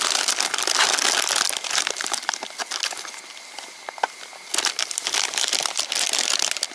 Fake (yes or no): no